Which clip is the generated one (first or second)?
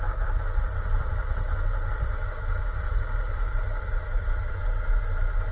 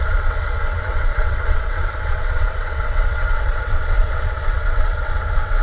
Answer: second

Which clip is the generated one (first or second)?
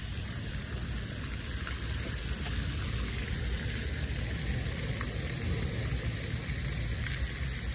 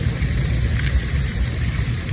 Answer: second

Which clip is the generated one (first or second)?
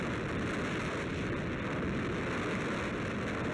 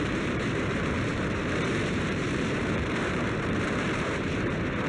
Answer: second